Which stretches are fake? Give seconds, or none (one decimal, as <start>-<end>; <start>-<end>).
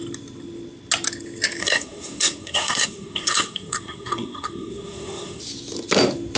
1.6-5.4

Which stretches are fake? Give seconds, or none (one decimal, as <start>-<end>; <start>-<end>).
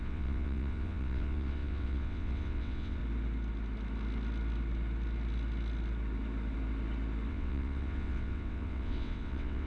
0.0-3.0; 7.3-9.7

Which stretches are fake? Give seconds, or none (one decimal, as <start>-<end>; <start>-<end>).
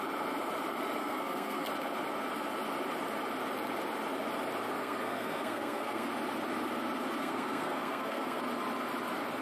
1.0-1.7; 4.8-6.1; 7.2-8.4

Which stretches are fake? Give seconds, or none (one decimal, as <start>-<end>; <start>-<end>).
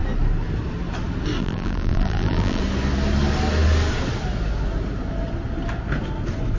1.4-2.6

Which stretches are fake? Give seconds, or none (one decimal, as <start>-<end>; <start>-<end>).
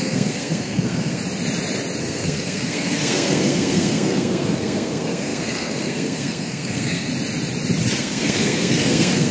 0.0-1.2; 2.0-7.1; 8.0-9.3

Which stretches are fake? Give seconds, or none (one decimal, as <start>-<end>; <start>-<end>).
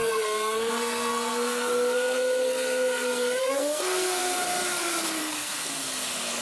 0.0-6.4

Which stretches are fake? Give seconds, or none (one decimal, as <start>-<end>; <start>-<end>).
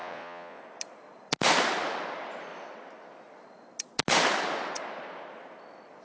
0.0-0.6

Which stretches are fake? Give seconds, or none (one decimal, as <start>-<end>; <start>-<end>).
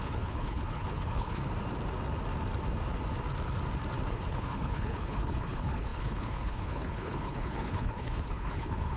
0.0-1.4; 4.1-9.0